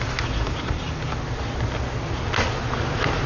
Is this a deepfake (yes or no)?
no